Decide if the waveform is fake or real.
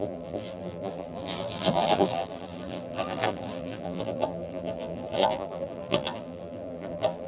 fake